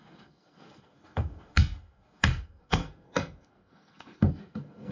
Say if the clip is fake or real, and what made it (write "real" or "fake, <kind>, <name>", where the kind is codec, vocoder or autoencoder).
fake, codec, SNAC